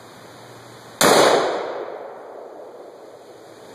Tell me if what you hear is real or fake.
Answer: real